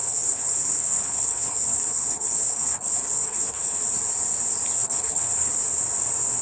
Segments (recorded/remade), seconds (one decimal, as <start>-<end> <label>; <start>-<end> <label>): 0.0-3.8 remade; 3.8-4.8 recorded; 4.8-5.5 remade; 5.5-6.4 recorded